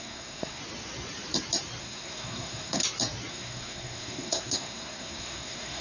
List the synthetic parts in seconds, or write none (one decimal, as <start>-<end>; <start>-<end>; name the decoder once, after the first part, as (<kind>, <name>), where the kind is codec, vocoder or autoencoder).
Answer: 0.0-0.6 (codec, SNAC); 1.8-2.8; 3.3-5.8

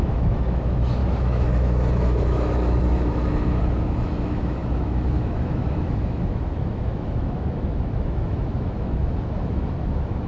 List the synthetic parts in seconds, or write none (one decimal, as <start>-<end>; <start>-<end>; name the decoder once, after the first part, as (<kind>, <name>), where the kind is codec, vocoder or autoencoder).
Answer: 0.0-10.3 (autoencoder, DAC-VAE)

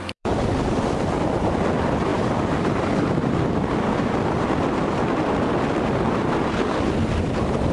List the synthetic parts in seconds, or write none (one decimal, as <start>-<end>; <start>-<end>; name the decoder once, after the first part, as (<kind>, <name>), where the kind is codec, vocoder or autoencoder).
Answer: 0.0-7.7 (vocoder, BigVGAN v2)

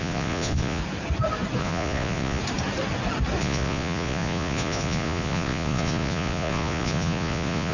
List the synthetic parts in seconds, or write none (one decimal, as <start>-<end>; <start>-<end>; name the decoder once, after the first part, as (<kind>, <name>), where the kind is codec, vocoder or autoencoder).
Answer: 0.0-0.8 (vocoder, Vocos); 1.6-2.4; 3.4-7.7

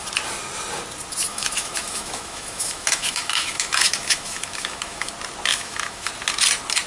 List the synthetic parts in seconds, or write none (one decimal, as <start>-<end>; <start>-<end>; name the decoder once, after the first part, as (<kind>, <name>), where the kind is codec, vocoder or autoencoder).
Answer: 1.3-5.1 (autoencoder, DAC-VAE); 5.5-6.1

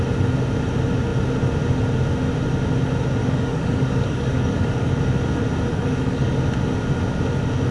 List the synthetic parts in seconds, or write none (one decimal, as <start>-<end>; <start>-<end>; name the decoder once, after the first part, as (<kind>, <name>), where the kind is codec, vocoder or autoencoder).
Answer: 3.2-4.9 (codec, DAC); 5.7-6.4

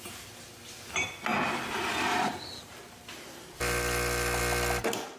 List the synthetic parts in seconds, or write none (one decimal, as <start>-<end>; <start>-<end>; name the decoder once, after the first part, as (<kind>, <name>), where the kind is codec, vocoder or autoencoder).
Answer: 1.3-4.4 (vocoder, BigVGAN v2)

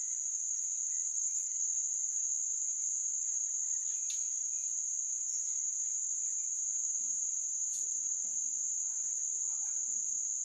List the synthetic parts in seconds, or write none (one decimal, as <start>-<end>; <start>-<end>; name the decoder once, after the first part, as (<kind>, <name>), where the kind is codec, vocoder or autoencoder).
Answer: 1.1-1.7 (codec, SNAC)